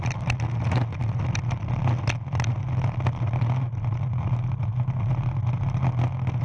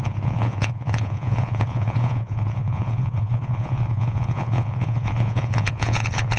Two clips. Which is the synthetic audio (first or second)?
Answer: second